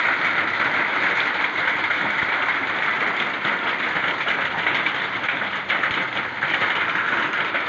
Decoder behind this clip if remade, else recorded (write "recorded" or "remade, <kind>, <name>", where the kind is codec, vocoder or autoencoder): recorded